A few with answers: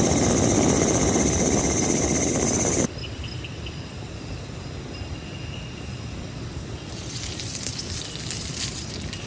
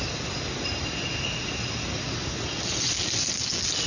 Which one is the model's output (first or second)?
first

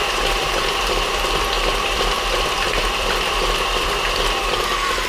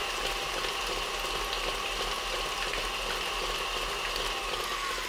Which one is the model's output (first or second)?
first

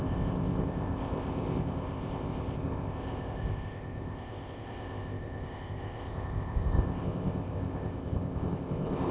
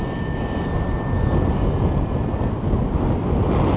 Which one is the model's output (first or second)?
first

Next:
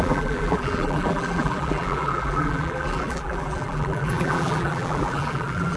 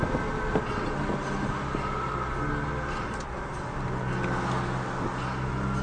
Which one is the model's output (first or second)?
first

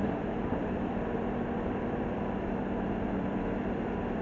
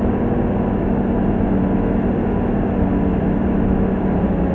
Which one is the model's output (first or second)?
first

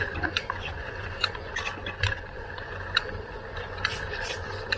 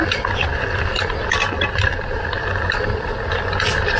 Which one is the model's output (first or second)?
first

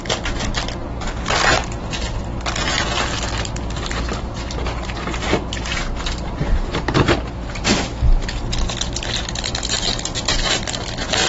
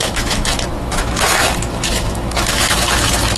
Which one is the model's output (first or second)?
second